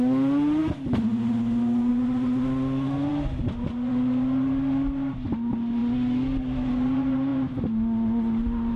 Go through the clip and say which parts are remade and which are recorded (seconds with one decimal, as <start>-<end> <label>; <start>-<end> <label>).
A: 0.0-8.8 recorded